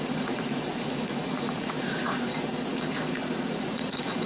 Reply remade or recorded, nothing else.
remade